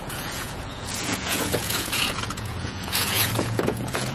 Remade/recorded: remade